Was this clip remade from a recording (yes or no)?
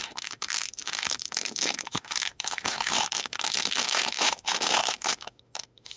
yes